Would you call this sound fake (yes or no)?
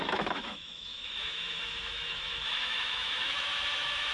yes